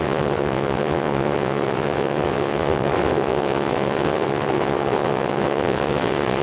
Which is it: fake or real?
fake